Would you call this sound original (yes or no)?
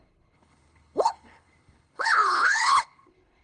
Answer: no